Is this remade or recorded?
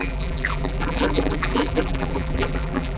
remade